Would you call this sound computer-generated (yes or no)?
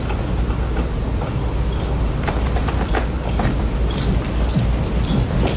no